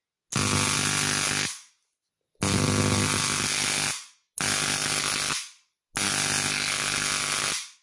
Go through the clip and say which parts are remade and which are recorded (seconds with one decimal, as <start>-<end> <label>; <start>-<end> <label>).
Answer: 0.0-7.8 recorded